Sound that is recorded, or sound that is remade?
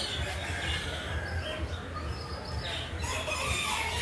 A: recorded